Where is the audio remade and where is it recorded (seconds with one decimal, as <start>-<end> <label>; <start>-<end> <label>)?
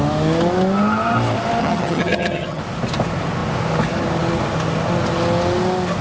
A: 0.0-1.6 recorded; 1.6-2.6 remade; 2.6-6.0 recorded